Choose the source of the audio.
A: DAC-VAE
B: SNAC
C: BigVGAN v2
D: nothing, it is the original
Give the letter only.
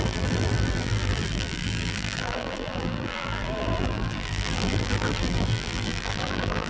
C